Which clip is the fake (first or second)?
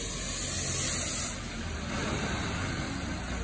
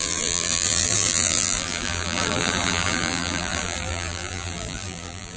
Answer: second